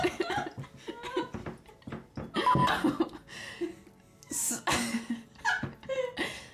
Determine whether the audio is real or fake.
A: real